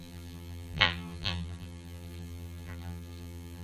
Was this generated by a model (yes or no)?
yes